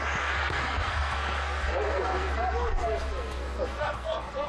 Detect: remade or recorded remade